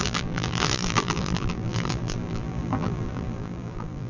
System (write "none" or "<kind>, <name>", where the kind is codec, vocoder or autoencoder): vocoder, BigVGAN v2